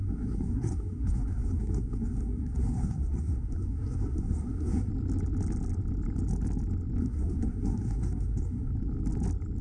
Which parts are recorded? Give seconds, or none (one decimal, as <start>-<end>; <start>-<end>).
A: 4.9-7.0; 8.7-9.6